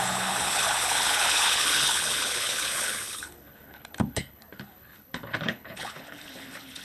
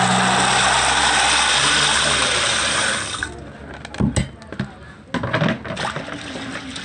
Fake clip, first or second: first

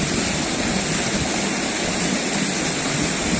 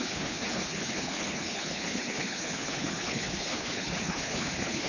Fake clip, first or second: second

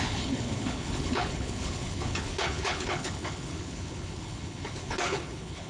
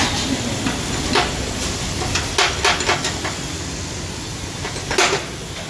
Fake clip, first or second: first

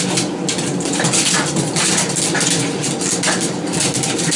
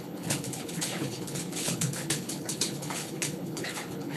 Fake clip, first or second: second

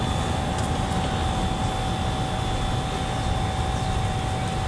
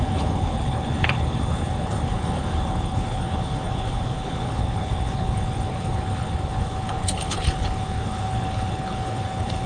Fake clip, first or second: second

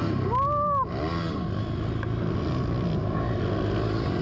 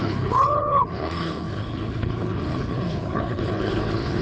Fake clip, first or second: second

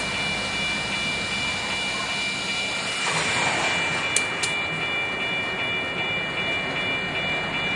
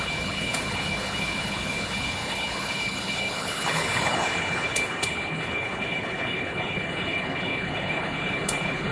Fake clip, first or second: second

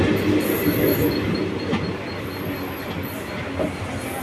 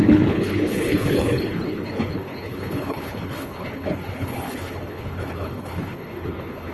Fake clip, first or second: second